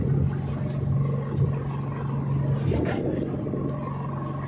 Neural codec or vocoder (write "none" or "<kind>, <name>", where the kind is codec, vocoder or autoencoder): none